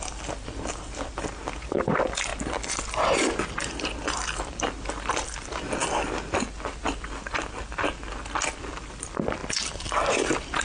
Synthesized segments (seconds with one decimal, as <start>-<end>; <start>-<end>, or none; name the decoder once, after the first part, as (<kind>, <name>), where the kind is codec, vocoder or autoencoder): 0.0-2.3 (vocoder, BigVGAN v2); 3.6-5.8; 8.6-10.6